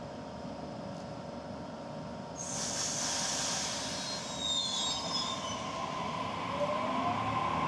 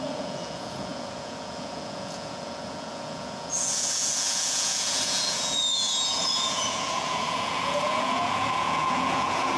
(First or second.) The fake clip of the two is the second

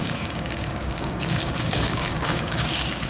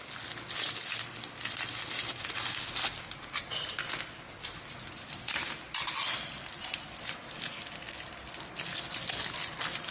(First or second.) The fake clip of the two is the first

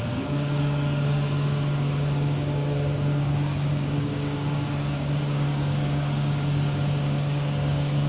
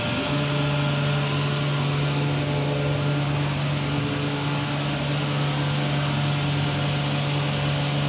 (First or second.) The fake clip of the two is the first